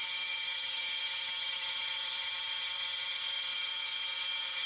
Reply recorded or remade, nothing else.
remade